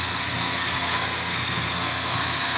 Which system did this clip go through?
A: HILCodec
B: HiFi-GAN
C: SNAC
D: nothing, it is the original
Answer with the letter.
C